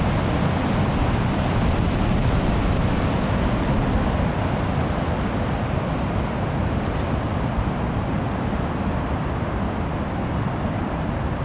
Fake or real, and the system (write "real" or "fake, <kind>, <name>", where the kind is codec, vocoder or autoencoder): real